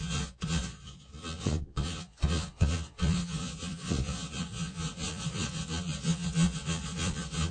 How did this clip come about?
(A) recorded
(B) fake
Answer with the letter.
B